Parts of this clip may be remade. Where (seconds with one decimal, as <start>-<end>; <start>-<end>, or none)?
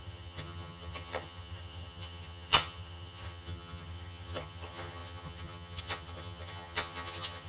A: 0.0-7.5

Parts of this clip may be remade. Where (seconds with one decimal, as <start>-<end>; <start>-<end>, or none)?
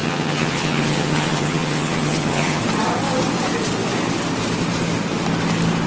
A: 0.0-2.6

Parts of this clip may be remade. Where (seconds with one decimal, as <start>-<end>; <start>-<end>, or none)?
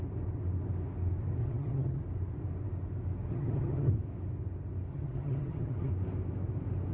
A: 1.4-2.0; 3.3-3.9; 4.9-5.9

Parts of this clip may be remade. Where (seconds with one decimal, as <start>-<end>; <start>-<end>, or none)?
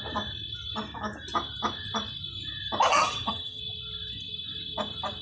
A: 2.9-3.6